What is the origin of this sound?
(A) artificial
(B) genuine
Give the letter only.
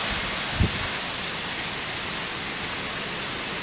B